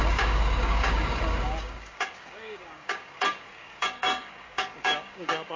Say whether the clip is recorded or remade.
remade